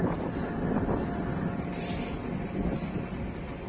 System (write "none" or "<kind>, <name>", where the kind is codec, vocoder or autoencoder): none